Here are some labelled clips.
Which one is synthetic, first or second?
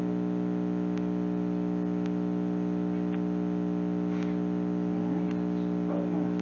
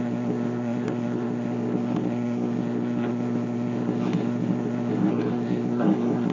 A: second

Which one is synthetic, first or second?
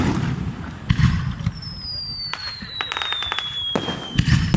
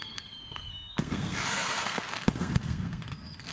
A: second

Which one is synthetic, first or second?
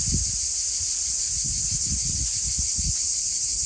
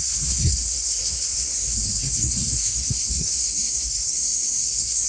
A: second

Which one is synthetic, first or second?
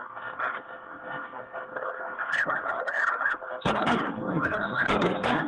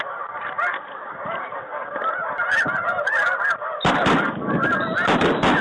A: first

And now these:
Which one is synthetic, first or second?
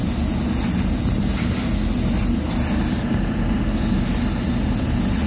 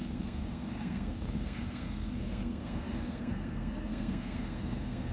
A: second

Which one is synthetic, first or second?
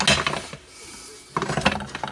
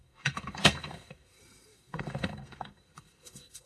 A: second